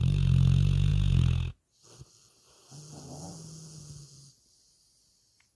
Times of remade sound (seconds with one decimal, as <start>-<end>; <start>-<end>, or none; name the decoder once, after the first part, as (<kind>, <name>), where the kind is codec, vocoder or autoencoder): none